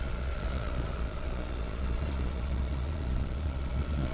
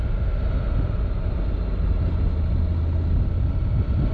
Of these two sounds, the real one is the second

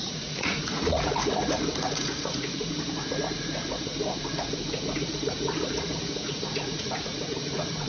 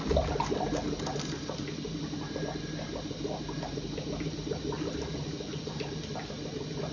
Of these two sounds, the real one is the second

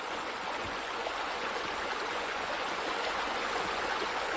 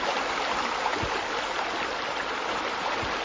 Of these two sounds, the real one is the second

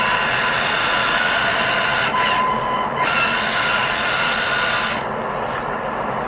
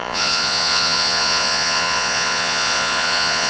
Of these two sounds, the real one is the first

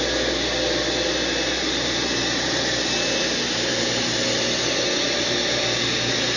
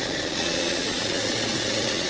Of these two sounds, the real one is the first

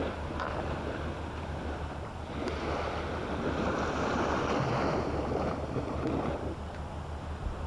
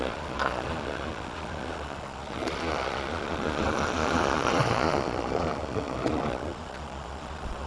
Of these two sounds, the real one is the first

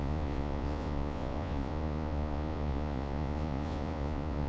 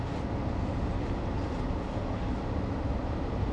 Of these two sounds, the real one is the second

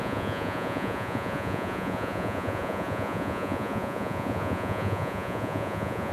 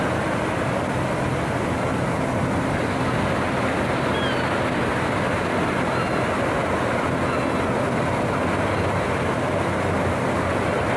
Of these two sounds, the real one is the second